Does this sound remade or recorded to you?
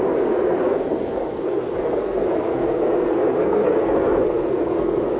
remade